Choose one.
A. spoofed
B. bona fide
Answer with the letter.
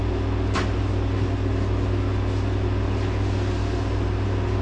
B